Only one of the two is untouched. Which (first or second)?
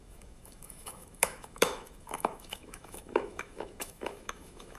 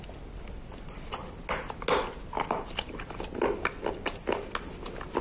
second